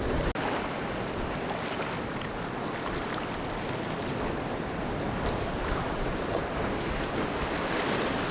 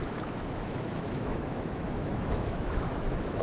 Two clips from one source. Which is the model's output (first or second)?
second